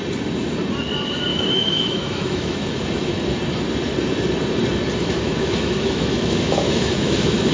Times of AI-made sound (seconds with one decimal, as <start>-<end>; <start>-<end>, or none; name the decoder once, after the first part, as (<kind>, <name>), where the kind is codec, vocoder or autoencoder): 1.3-3.1 (autoencoder, DAC-VAE); 5.0-7.5